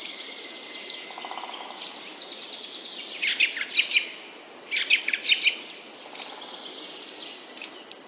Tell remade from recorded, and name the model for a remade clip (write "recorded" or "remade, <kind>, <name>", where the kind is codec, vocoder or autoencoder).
recorded